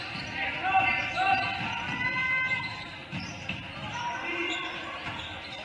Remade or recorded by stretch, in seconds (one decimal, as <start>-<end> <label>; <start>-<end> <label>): 0.0-2.2 recorded; 2.2-5.0 remade; 5.0-5.6 recorded